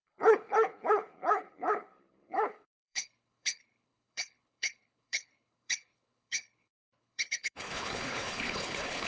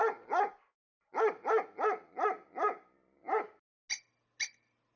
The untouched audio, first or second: second